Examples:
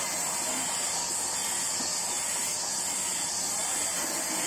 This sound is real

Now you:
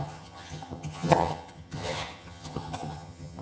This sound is fake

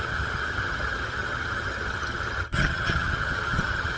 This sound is fake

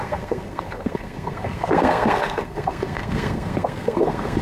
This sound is fake